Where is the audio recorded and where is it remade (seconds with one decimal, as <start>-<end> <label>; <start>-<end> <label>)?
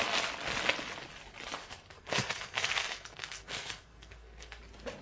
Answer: 0.0-1.6 recorded; 1.6-4.6 remade; 4.6-5.0 recorded